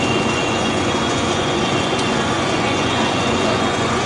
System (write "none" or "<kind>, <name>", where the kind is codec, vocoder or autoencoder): vocoder, Vocos